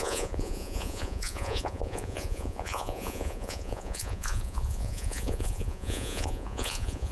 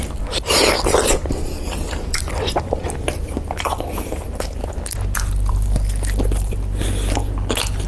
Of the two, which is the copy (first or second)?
first